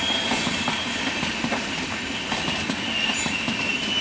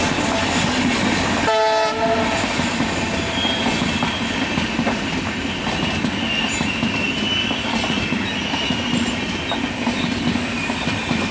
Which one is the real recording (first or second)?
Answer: second